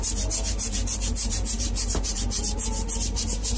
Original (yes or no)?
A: no